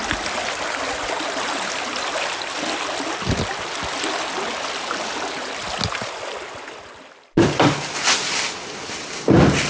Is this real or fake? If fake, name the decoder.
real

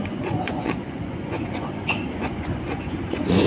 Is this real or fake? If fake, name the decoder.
fake, vocoder, Vocos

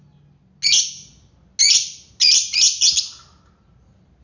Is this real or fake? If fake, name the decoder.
real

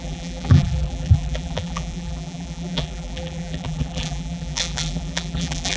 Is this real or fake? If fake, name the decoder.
fake, vocoder, BigVGAN v2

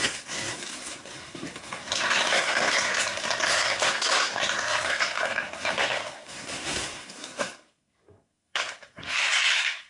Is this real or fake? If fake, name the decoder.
fake, codec, SNAC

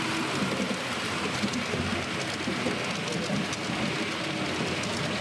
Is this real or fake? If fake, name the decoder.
real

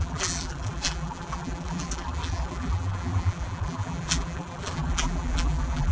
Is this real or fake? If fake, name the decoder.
fake, vocoder, BigVGAN v2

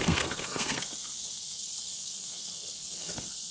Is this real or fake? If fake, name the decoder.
fake, codec, SNAC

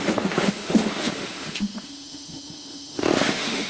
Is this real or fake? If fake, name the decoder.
fake, autoencoder, DAC-VAE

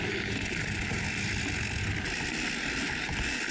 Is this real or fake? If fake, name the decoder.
real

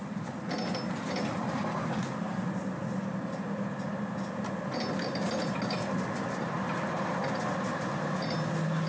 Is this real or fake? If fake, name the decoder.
real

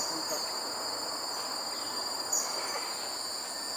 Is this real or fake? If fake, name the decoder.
real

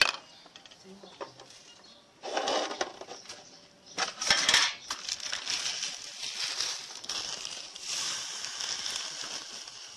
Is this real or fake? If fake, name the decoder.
real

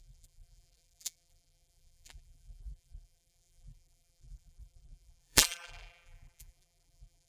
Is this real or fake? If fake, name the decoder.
fake, vocoder, BigVGAN v2